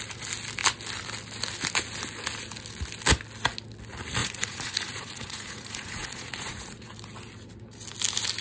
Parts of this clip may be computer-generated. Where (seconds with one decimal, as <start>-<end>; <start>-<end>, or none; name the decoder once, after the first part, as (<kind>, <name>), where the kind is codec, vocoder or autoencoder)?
4.2-6.9 (vocoder, Vocos)